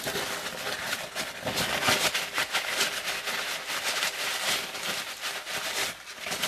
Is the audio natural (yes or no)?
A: yes